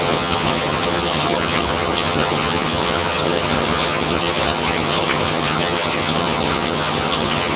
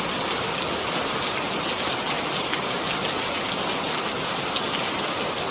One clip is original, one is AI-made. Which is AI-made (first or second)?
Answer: first